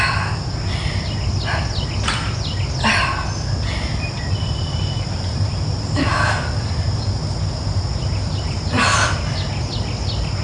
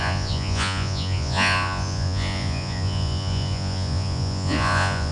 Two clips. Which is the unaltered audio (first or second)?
first